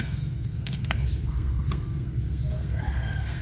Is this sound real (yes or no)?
no